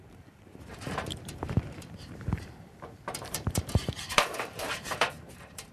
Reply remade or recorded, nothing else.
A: remade